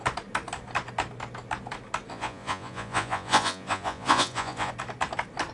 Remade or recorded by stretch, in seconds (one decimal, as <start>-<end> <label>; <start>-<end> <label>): 0.0-2.1 recorded; 2.1-4.7 remade; 4.7-5.5 recorded